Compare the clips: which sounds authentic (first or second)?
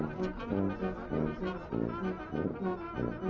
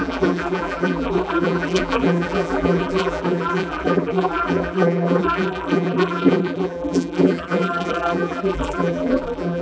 first